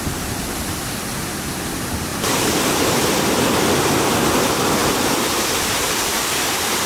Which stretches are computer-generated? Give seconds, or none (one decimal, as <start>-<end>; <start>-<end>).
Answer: 2.1-3.1; 4.8-6.9